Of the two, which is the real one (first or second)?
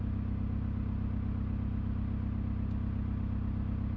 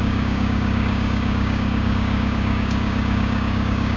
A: first